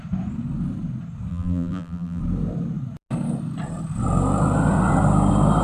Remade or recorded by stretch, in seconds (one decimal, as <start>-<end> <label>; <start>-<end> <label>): 0.0-1.3 recorded; 1.3-2.2 remade; 2.2-5.6 recorded